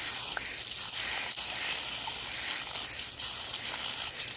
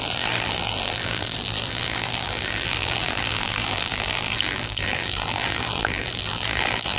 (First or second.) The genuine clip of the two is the first